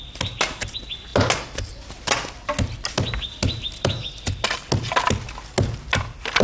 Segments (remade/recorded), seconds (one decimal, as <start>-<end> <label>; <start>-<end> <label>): 0.0-6.4 recorded